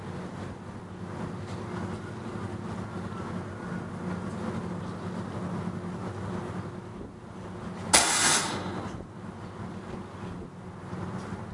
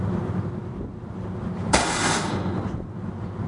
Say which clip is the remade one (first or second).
second